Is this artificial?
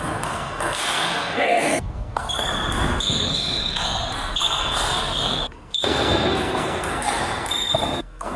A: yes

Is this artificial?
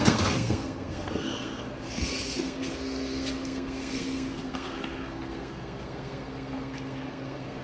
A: yes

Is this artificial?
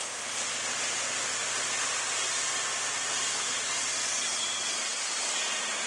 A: no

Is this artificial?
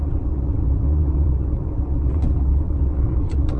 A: yes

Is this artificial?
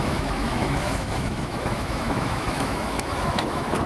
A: yes